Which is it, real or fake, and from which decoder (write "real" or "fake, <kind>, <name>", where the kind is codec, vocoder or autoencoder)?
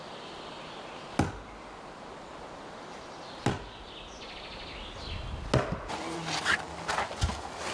real